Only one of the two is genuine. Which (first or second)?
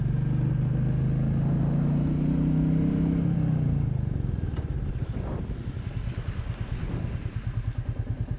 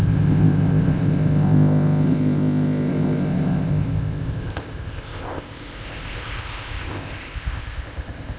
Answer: first